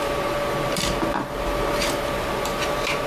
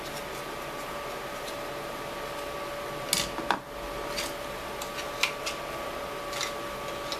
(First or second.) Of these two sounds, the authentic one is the second